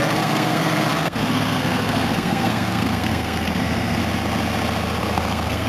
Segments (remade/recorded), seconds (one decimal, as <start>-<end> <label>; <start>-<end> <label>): 0.0-4.0 remade; 4.0-5.0 recorded; 5.0-5.7 remade